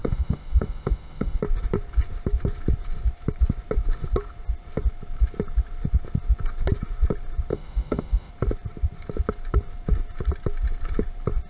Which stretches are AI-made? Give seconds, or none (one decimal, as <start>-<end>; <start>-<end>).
0.0-1.4; 7.5-8.3